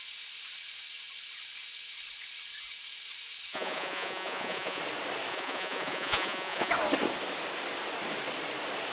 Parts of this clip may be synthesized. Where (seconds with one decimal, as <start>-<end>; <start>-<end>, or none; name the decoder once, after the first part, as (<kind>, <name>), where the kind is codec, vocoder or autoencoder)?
3.5-4.8 (vocoder, Vocos); 5.3-6.7